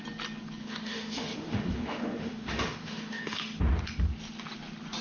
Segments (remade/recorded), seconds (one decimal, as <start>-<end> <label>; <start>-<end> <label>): 0.0-0.6 recorded; 0.6-3.6 remade; 3.6-5.0 recorded